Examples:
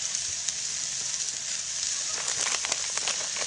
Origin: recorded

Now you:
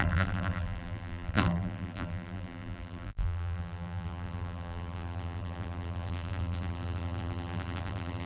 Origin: remade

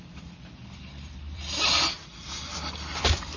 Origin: remade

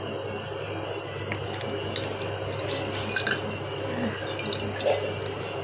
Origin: recorded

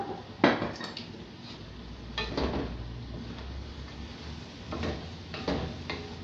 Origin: recorded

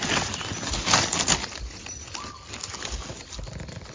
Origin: recorded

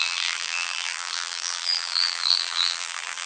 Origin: remade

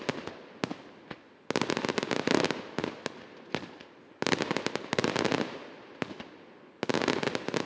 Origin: recorded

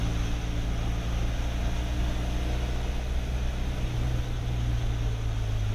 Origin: recorded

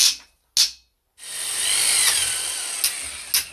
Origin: recorded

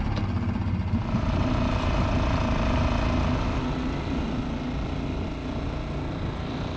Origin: recorded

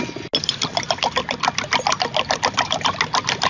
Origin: recorded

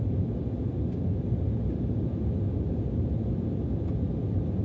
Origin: recorded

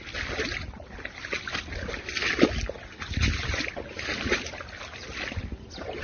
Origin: recorded